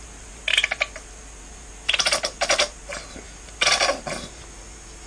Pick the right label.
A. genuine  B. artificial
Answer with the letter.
A